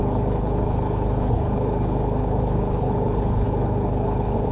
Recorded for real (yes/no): no